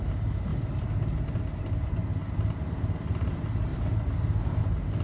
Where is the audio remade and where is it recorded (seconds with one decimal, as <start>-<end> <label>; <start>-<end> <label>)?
0.0-0.5 recorded; 0.5-1.4 remade; 1.4-2.2 recorded; 2.2-3.1 remade; 3.1-3.7 recorded; 3.7-4.6 remade; 4.6-5.0 recorded